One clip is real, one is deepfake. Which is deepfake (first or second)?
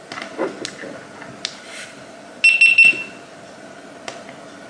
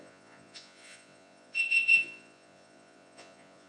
second